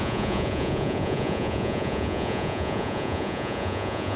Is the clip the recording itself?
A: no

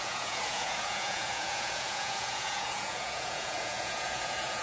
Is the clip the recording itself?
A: no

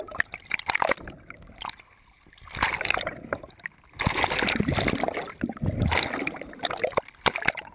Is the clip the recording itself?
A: yes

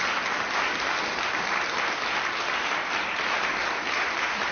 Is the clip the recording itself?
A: yes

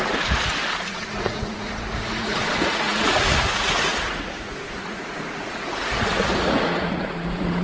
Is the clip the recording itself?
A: no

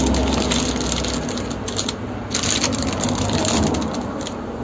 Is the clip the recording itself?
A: yes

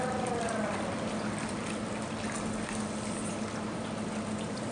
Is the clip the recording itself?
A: yes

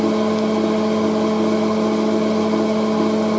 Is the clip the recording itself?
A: yes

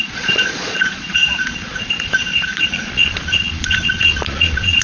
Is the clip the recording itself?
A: no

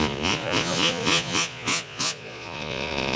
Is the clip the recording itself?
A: no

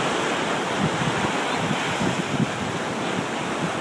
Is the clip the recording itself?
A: yes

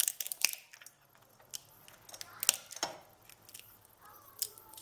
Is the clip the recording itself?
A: yes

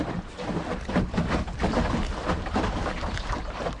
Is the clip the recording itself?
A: yes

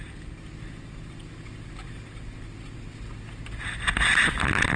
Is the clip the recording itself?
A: yes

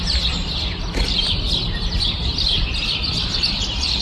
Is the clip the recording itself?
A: yes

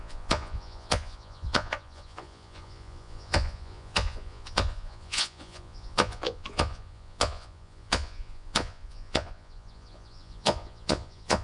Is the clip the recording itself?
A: no